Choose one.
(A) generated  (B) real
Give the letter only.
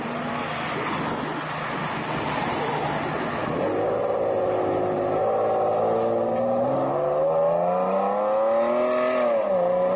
B